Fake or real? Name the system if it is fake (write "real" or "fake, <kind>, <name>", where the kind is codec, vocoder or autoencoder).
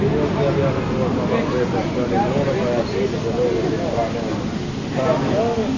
real